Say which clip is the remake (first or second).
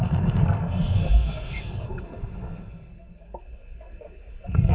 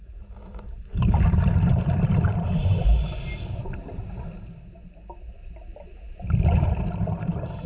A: first